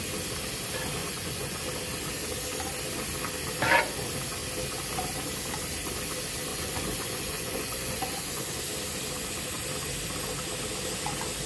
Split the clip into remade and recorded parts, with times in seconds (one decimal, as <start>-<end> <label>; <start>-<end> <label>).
0.0-1.0 recorded; 1.0-1.6 remade; 1.6-6.5 recorded; 6.5-8.6 remade; 8.6-11.5 recorded